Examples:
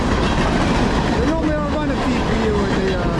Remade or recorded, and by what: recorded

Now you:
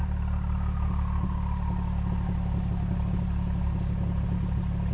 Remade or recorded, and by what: recorded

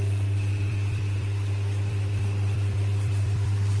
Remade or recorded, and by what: remade, vocoder, BigVGAN v2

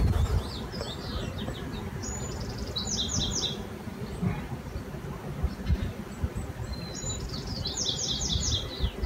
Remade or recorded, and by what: recorded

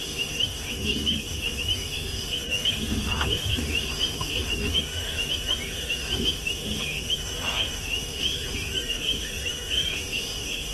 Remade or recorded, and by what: remade, autoencoder, DAC-VAE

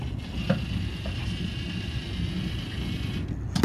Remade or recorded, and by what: recorded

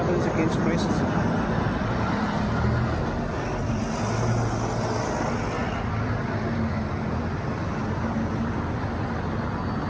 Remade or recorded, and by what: recorded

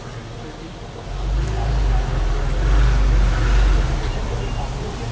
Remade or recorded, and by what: recorded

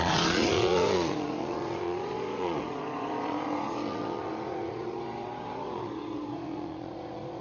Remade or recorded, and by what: remade, vocoder, Vocos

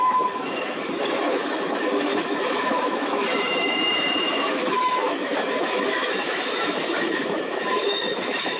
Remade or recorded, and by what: remade, autoencoder, DAC-VAE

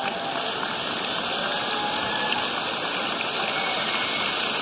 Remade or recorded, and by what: recorded